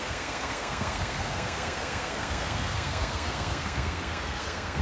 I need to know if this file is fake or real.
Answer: fake